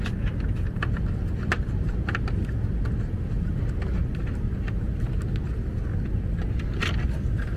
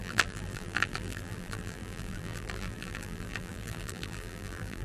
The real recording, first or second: first